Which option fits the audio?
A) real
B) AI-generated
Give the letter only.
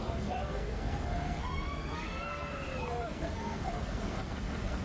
B